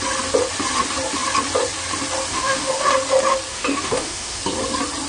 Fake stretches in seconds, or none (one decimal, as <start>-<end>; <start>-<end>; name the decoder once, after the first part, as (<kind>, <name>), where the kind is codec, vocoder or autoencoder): 2.3-2.9 (autoencoder, DAC-VAE); 3.5-4.4

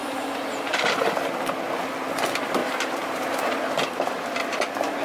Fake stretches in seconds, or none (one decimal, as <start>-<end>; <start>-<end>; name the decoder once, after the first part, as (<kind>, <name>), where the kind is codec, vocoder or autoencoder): 0.0-1.3 (vocoder, BigVGAN v2); 2.6-3.2